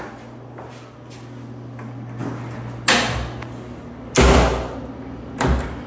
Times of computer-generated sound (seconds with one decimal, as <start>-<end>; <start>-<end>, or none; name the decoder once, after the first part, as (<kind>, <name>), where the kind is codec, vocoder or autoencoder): none